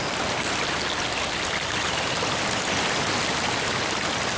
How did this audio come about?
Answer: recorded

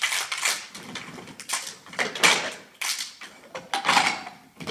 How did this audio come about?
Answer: recorded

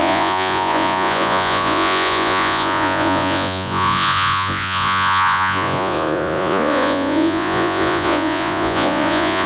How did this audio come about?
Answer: remade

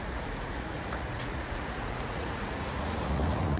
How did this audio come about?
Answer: remade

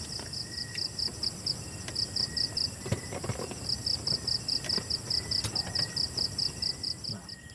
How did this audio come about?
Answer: recorded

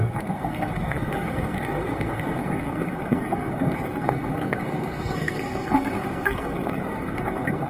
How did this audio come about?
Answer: remade